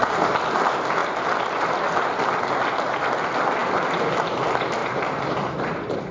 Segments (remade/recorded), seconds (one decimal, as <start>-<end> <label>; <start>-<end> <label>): 0.0-4.8 recorded; 4.8-6.1 remade